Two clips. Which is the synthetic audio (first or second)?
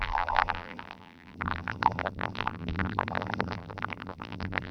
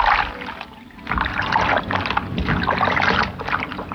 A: first